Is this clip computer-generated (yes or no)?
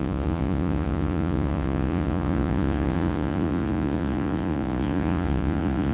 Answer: yes